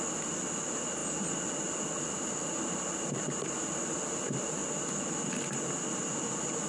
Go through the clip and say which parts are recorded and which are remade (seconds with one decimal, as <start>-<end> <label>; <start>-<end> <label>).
0.0-6.7 recorded